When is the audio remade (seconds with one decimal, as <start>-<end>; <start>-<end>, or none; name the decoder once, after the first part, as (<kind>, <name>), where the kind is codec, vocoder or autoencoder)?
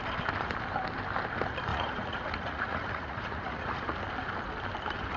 1.7-4.0 (vocoder, Vocos)